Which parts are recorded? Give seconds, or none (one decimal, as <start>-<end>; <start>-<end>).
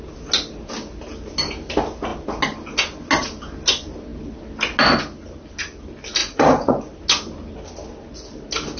0.0-6.2; 6.8-8.8